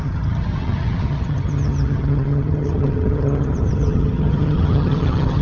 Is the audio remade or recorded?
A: remade